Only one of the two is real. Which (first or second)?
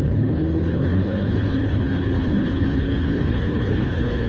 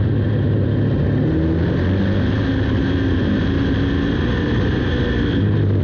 second